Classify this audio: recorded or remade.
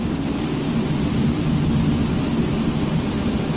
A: recorded